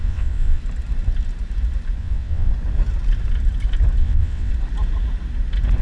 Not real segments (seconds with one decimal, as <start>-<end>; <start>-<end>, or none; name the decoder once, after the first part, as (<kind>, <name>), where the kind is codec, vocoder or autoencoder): 0.0-0.6 (vocoder, WaveNeXt); 2.0-2.5; 4.0-4.5